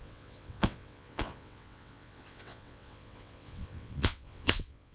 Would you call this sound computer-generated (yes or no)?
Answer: yes